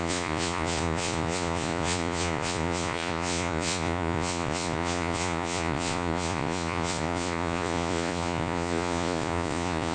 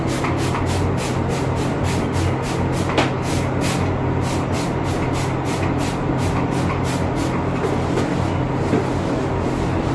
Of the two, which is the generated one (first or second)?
first